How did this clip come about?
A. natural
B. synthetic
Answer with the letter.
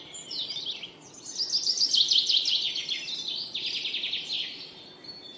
A